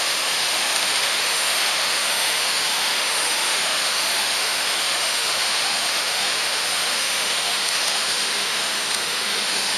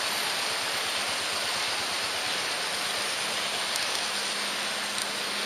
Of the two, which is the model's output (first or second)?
first